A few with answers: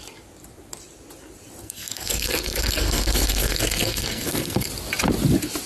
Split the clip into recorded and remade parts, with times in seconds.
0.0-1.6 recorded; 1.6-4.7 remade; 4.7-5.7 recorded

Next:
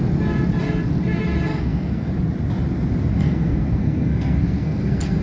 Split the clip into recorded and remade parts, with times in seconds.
0.0-1.5 recorded; 1.5-2.1 remade; 2.1-3.1 recorded; 3.1-5.2 remade

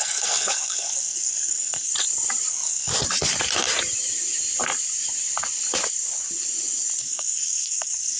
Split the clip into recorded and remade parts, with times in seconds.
0.0-1.9 remade; 1.9-2.5 recorded; 2.5-2.9 remade; 2.9-7.0 recorded; 7.0-8.2 remade

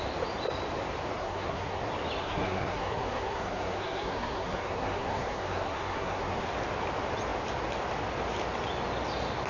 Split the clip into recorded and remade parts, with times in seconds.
0.0-1.2 recorded; 1.2-1.8 remade; 1.8-2.2 recorded; 2.2-6.4 remade; 6.4-9.5 recorded